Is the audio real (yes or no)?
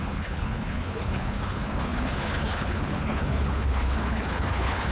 no